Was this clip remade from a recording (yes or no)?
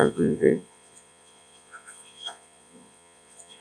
yes